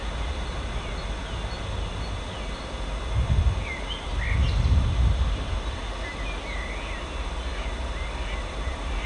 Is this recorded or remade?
recorded